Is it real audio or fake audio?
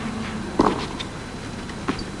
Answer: real